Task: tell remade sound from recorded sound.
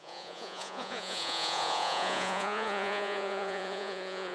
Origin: remade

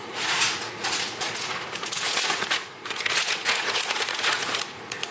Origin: remade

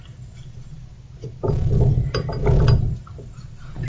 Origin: recorded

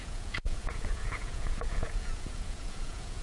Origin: remade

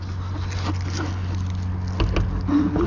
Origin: recorded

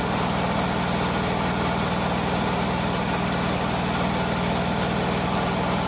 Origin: recorded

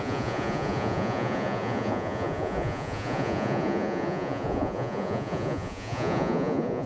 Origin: remade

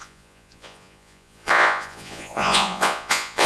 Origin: remade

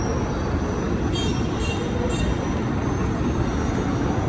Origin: recorded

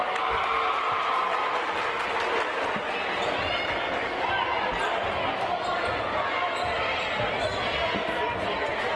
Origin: recorded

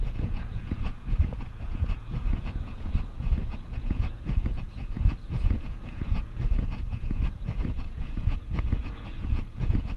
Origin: remade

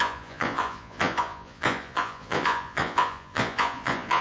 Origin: remade